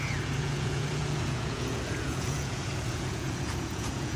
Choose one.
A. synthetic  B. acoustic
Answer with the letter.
A